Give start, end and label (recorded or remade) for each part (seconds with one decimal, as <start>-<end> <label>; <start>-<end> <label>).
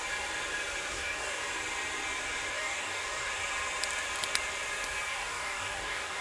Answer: 0.0-0.9 recorded; 0.9-1.4 remade; 1.4-2.5 recorded; 2.5-3.3 remade; 3.3-5.1 recorded; 5.1-6.2 remade